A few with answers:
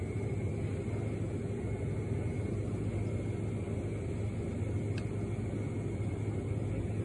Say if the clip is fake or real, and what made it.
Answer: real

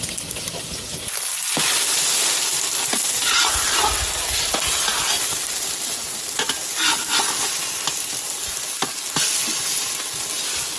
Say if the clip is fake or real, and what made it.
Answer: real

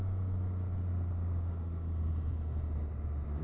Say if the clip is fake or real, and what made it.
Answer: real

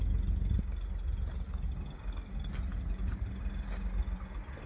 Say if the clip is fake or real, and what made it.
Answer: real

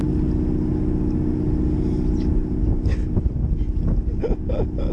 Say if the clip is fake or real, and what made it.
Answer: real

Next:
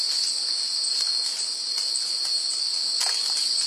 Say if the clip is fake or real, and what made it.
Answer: real